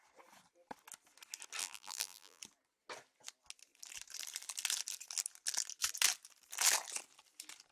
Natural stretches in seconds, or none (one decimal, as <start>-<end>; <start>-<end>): 0.0-1.6; 2.4-7.7